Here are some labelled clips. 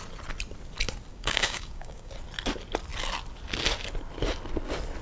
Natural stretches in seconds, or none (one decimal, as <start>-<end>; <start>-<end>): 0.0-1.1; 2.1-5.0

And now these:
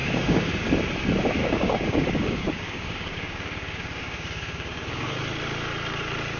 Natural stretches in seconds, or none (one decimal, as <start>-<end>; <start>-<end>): 0.5-1.4; 5.2-6.4

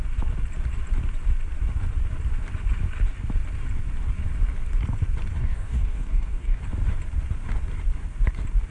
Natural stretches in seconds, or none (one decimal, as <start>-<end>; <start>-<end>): 0.0-5.4; 6.6-8.7

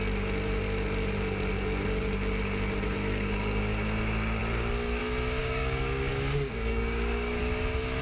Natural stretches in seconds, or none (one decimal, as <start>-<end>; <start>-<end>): 0.0-3.0; 3.6-5.4; 7.4-8.0

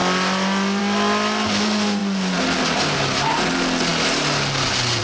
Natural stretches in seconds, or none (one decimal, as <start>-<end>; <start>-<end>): 0.0-5.0

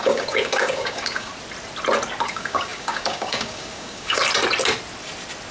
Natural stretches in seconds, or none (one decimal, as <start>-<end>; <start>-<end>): 1.3-2.3; 4.2-5.5

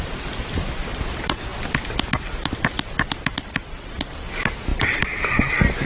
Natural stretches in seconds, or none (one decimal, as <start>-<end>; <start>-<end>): 0.0-5.9

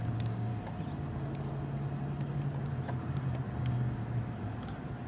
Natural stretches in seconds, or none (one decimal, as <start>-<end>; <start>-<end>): 0.5-3.6; 4.0-5.1